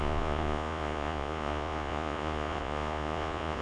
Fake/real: fake